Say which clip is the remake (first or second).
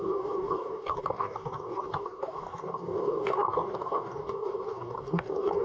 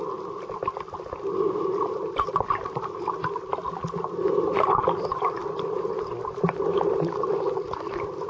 first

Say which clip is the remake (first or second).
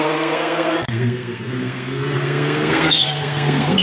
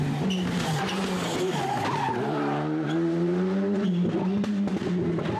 first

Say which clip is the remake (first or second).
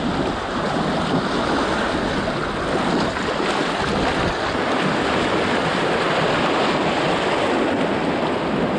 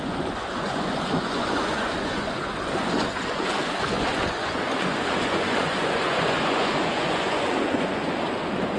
second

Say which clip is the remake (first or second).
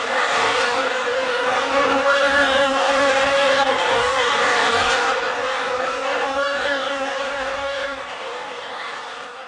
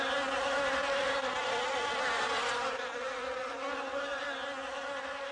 first